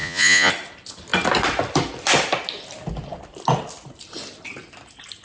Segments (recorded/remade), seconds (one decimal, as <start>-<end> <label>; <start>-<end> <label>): 0.0-0.5 remade; 0.5-5.2 recorded